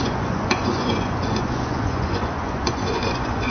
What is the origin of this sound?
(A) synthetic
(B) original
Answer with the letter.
A